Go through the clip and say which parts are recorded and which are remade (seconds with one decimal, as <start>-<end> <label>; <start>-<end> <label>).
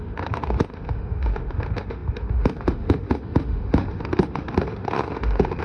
0.0-5.6 remade